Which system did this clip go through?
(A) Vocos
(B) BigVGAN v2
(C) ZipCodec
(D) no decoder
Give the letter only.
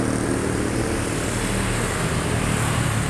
D